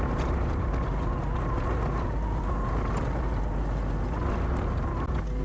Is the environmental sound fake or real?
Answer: real